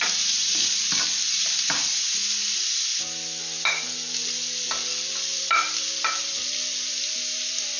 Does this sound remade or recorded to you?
recorded